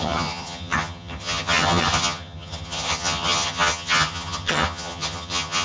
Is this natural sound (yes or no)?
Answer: no